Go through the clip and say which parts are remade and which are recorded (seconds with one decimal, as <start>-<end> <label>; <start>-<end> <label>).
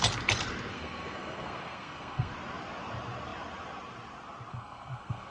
0.0-0.7 recorded; 0.7-2.3 remade; 2.3-4.5 recorded; 4.5-5.3 remade